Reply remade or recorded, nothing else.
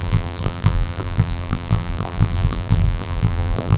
remade